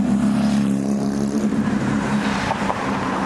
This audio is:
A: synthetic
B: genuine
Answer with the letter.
A